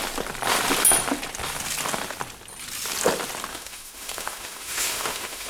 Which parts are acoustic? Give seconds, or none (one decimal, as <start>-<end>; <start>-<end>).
0.0-3.5